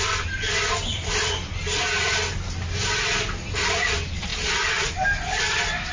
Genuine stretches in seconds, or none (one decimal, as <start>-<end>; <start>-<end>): 0.0-4.3; 5.4-5.9